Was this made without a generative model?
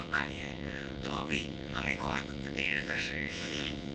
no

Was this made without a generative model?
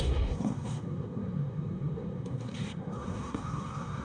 no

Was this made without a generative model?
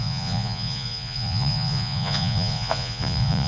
no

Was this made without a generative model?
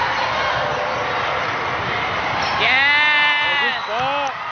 yes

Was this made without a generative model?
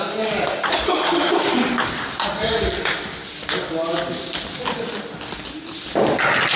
yes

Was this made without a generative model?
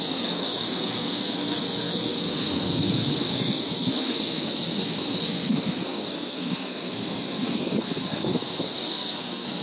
no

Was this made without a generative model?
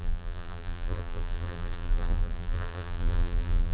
no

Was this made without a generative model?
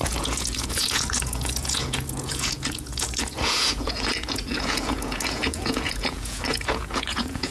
no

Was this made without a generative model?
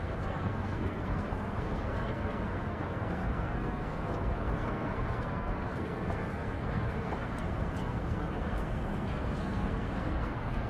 no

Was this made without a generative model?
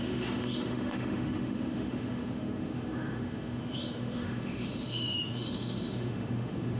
no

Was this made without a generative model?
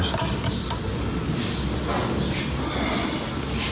yes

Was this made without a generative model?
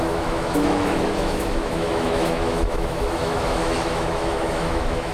no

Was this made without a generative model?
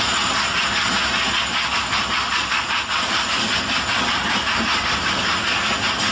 yes